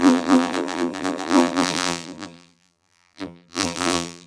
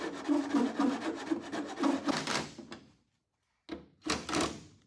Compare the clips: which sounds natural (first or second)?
second